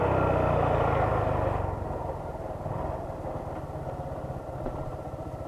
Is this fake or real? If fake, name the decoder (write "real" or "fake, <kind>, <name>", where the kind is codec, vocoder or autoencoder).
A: real